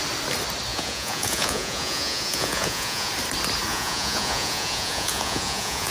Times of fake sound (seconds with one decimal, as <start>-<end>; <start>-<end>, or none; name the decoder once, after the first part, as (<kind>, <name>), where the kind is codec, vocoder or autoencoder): 0.7-3.1 (vocoder, Vocos); 3.7-5.9